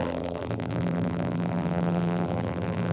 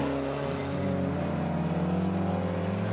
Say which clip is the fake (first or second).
first